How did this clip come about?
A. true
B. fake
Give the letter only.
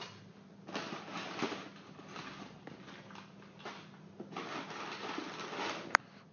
A